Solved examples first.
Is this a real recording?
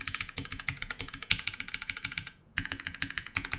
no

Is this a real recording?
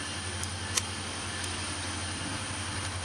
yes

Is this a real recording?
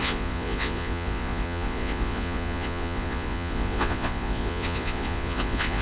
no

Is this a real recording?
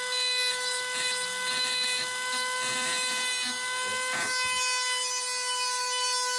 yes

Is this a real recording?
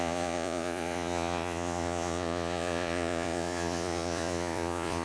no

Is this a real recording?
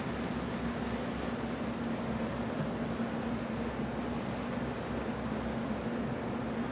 yes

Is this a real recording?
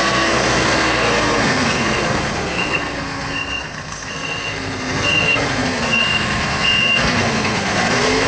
no